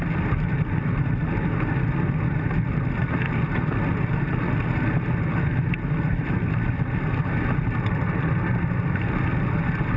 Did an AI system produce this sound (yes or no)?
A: no